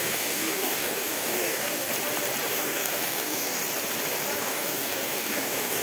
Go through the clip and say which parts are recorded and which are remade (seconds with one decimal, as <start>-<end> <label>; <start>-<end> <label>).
0.0-1.9 remade; 1.9-2.5 recorded; 2.5-3.6 remade; 3.6-4.4 recorded; 4.4-5.8 remade